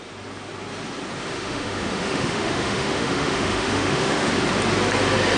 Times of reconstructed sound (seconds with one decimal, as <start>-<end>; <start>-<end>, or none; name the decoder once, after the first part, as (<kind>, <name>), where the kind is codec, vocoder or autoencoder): 1.2-4.3 (autoencoder, DAC-VAE)